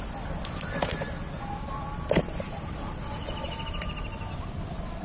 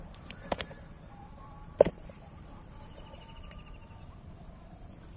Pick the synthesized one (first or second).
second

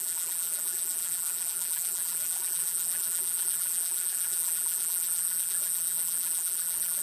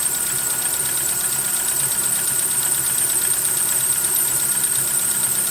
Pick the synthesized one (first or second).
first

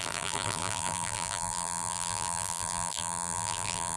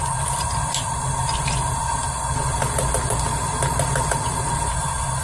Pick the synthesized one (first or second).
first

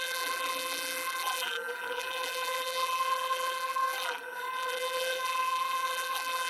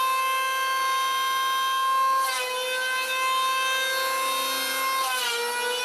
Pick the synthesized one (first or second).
first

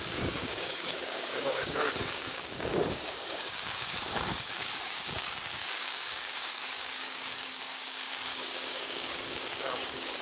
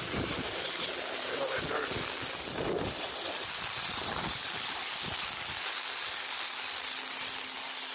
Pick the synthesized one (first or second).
first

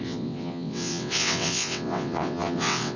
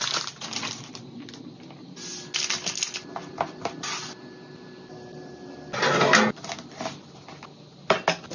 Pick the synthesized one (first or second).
first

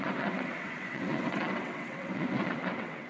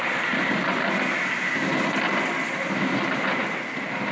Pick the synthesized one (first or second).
first